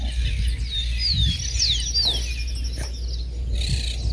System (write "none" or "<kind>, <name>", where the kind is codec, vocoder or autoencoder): none